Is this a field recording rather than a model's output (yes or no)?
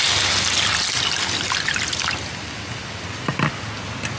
yes